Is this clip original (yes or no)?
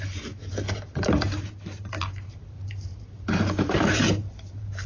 no